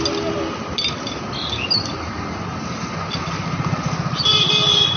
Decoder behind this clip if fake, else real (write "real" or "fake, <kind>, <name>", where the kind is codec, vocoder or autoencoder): real